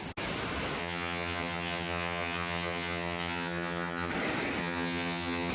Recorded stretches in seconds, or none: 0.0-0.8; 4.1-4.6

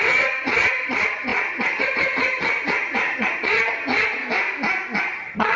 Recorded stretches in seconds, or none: 4.2-5.0

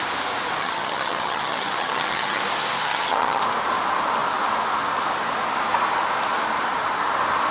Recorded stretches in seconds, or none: 0.0-0.6; 2.4-2.8; 3.4-7.5

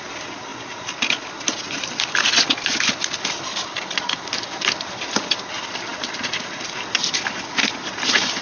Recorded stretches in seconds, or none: 0.0-8.4

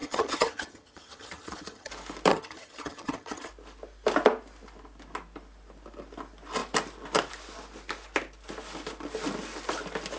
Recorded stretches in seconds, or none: 1.9-2.3; 3.5-10.2